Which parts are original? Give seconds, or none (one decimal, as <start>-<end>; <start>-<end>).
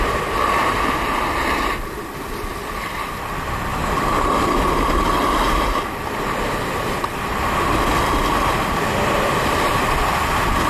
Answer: 0.0-10.7